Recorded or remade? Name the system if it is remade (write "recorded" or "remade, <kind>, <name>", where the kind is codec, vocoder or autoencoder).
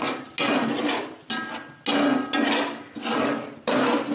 recorded